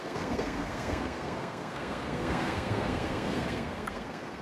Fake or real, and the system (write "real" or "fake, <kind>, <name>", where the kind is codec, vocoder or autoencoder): fake, codec, SNAC